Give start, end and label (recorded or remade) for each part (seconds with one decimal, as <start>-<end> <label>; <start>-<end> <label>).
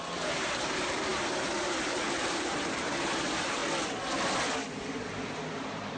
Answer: 0.0-3.6 remade; 3.6-4.8 recorded; 4.8-6.0 remade